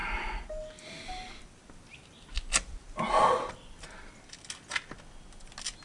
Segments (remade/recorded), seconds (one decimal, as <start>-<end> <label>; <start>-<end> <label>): 0.0-5.8 recorded